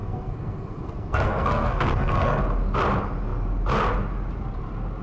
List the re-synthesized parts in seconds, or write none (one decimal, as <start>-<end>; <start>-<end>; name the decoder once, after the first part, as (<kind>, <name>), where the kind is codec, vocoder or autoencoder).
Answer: 0.0-2.4 (codec, SNAC)